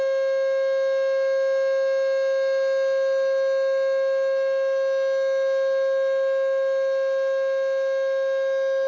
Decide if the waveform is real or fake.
real